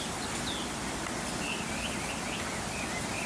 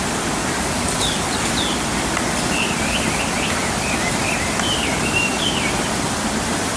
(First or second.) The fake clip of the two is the second